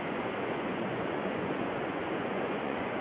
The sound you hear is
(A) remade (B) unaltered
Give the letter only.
A